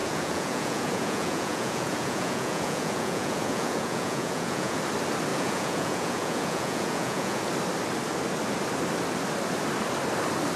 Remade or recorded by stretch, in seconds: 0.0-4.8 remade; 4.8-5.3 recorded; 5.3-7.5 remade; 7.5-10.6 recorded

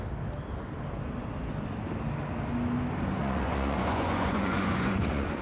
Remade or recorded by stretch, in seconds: 0.0-3.2 recorded; 3.2-5.4 remade

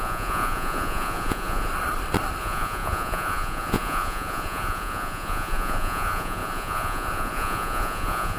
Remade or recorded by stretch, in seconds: 0.0-1.7 remade; 1.7-2.4 recorded; 2.4-8.4 remade

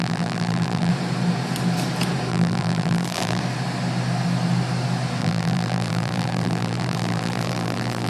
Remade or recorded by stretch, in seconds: 0.0-0.9 remade; 0.9-2.3 recorded; 2.3-3.4 remade; 3.4-5.2 recorded; 5.2-8.1 remade